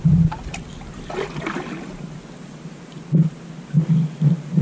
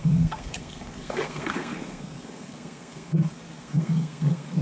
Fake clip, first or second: second